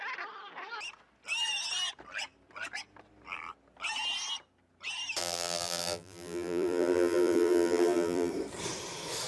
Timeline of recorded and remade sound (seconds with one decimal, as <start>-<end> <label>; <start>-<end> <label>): 0.0-5.2 recorded; 5.2-8.3 remade; 8.3-9.3 recorded